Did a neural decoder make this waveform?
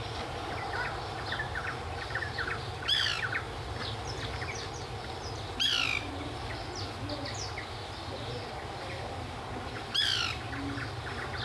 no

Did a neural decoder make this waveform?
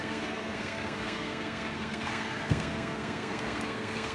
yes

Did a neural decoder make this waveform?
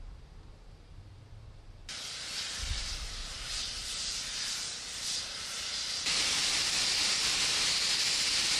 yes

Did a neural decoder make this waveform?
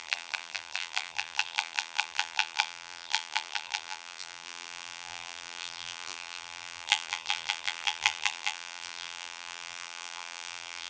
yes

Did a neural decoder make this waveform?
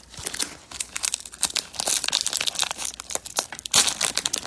no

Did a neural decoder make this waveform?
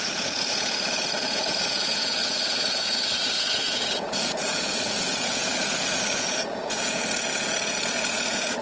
yes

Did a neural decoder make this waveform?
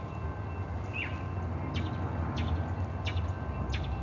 no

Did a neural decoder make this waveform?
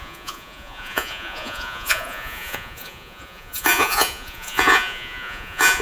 yes